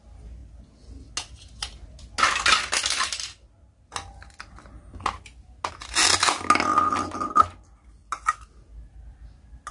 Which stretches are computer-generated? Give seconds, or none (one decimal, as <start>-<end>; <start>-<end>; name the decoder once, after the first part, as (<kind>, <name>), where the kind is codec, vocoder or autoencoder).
none